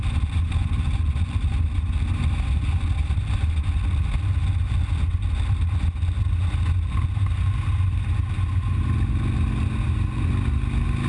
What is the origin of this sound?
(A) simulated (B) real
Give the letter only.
B